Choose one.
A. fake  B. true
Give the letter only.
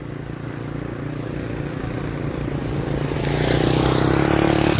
B